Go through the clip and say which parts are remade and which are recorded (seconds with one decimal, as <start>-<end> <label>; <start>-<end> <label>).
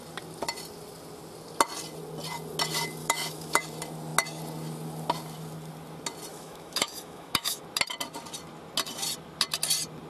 0.0-3.0 recorded; 3.0-3.6 remade; 3.6-6.3 recorded; 6.3-7.6 remade; 7.6-10.1 recorded